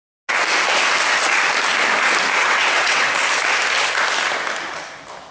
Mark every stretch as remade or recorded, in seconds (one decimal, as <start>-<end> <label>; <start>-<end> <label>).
0.0-2.4 recorded; 2.4-3.1 remade; 3.1-5.3 recorded